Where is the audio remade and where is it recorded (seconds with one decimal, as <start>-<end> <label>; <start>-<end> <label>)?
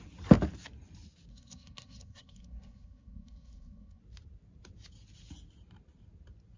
0.0-1.3 recorded; 1.3-4.0 remade; 4.0-6.6 recorded